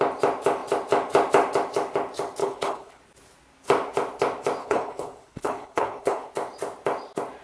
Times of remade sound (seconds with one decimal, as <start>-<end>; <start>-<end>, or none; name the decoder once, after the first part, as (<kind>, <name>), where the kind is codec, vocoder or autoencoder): 2.4-3.0 (codec, HILCodec); 4.6-6.3